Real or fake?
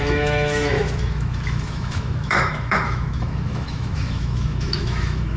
fake